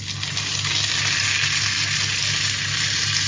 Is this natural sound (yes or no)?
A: yes